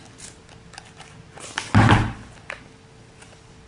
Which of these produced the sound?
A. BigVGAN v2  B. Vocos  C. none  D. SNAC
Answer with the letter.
C